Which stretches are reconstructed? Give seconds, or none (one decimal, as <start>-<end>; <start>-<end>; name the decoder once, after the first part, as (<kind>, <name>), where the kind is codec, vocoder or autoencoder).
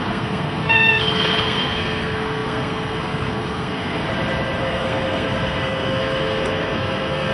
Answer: 0.0-4.0 (codec, SNAC); 4.6-7.3